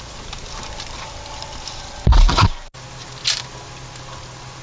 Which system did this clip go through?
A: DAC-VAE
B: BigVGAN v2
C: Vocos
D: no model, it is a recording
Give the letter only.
D